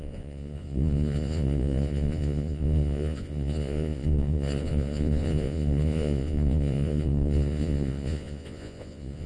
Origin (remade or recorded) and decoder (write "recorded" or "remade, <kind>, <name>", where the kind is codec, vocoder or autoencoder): remade, vocoder, Vocos